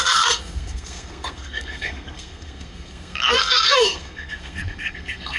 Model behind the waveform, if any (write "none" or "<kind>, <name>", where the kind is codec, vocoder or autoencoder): codec, SNAC